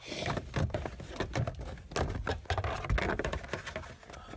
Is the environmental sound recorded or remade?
recorded